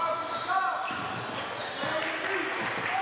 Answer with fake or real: real